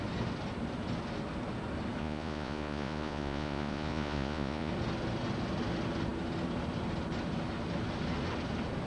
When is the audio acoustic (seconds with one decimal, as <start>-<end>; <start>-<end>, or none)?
0.0-2.0; 4.7-8.9